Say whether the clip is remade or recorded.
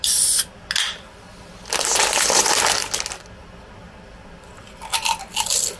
recorded